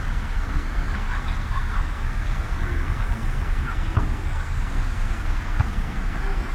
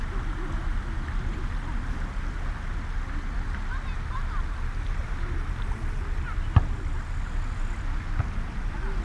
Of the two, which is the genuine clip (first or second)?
second